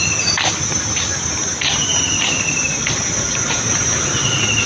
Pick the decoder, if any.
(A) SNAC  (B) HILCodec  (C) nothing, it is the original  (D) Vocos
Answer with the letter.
C